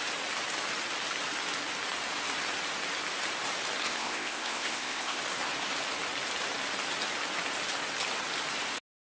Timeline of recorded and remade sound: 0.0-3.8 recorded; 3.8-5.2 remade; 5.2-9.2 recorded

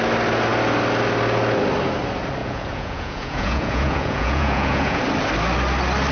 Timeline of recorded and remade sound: 0.0-2.4 recorded; 2.4-5.0 remade; 5.0-6.1 recorded

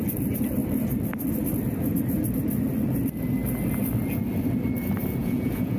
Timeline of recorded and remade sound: 0.0-5.2 recorded; 5.2-5.8 remade

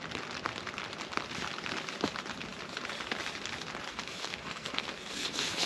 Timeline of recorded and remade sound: 0.0-3.9 recorded; 3.9-5.7 remade

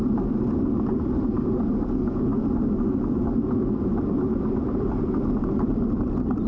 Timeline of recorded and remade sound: 0.0-2.3 recorded; 2.3-5.1 remade; 5.1-6.5 recorded

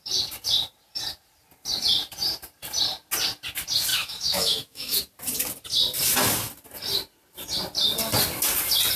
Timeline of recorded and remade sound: 0.0-3.9 recorded; 3.9-5.0 remade; 5.0-9.0 recorded

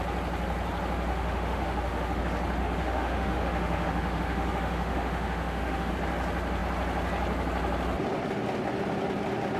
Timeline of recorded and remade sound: 0.0-1.1 recorded; 1.1-2.2 remade; 2.2-2.6 recorded; 2.6-5.9 remade; 5.9-9.6 recorded

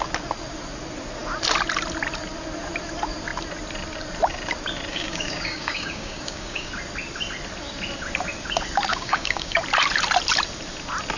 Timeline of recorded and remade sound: 0.0-4.9 recorded; 4.9-6.7 remade; 6.7-8.9 recorded; 8.9-9.6 remade; 9.6-11.2 recorded